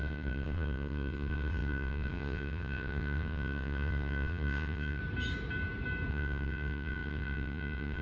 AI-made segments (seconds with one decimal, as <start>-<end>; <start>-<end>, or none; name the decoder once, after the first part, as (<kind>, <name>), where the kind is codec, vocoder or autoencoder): 0.0-5.0 (vocoder, WaveNeXt); 6.1-8.0